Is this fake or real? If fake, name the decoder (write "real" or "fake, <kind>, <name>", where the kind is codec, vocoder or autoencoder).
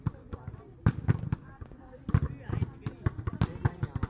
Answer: real